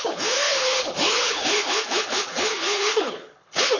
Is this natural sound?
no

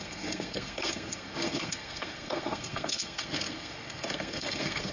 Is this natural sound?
no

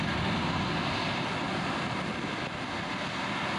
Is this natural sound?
yes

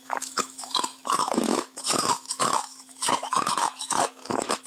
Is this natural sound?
no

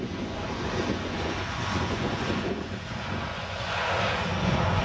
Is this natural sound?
no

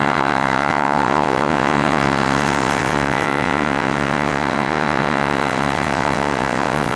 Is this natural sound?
no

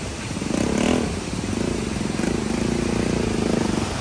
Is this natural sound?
yes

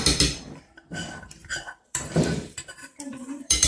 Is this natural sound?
no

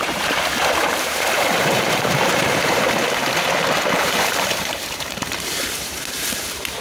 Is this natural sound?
no